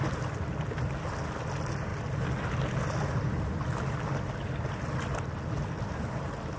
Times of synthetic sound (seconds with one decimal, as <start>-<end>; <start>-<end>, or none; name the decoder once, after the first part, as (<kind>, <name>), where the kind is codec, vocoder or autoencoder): none